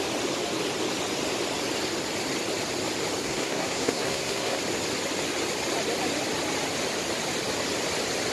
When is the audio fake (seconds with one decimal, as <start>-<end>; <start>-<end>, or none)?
3.2-4.6

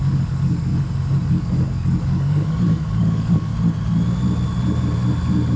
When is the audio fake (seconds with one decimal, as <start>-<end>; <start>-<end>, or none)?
0.0-0.7; 1.3-3.5

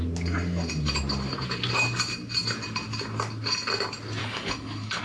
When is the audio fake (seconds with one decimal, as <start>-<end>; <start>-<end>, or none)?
4.2-5.0

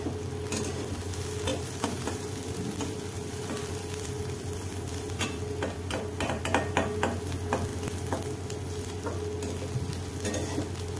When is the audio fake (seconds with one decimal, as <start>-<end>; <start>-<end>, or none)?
1.5-6.4